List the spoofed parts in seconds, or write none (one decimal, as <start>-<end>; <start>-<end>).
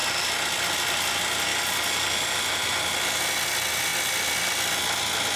0.0-1.0; 1.5-2.5; 3.9-4.8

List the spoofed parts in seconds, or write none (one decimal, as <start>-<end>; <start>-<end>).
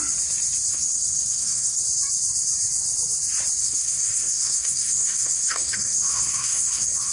0.7-1.8; 3.6-7.1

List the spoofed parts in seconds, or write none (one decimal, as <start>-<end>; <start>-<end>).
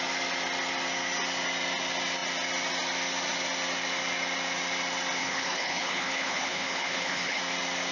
5.2-7.4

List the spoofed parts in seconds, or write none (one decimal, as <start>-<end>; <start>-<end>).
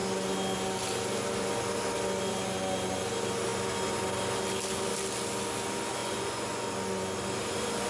6.0-6.7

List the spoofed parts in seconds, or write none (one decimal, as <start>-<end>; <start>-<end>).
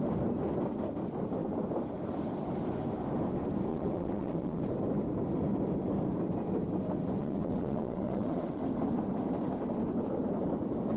3.7-4.6; 7.2-8.6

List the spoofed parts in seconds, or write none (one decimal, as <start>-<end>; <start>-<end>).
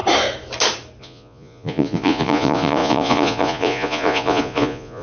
1.0-5.0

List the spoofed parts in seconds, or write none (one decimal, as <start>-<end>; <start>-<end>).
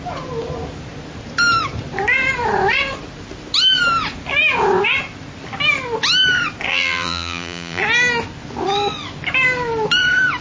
6.7-7.8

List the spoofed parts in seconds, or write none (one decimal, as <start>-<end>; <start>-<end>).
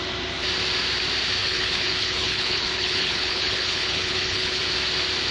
1.4-4.6